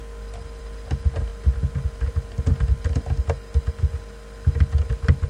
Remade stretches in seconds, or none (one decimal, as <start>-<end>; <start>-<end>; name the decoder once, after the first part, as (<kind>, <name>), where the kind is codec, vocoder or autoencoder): none